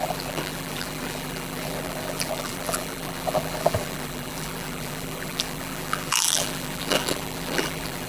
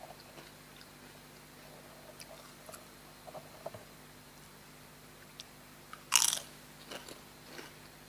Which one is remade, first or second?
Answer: first